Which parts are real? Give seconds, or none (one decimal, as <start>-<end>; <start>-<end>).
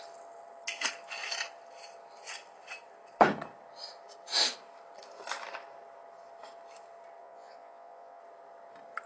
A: 0.0-7.2; 8.2-9.1